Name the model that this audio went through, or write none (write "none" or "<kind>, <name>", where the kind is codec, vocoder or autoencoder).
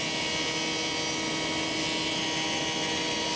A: none